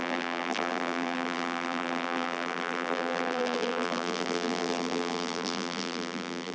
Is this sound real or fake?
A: fake